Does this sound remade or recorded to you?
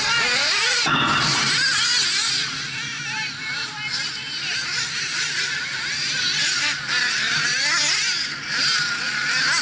recorded